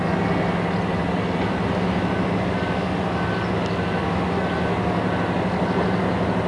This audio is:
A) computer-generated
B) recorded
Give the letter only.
B